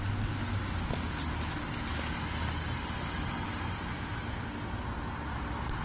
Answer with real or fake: real